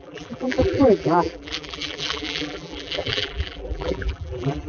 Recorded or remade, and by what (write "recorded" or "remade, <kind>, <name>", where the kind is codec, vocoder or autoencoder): remade, vocoder, BigVGAN v2